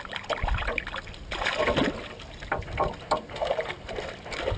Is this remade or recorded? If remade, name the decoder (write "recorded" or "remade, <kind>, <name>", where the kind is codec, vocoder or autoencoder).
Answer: recorded